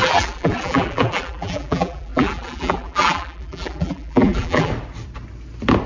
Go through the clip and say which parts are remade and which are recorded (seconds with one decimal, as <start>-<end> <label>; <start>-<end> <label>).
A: 0.0-4.7 remade; 4.7-5.9 recorded